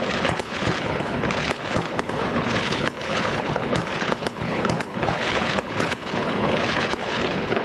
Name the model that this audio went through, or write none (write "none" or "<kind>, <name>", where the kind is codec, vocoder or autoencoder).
codec, HILCodec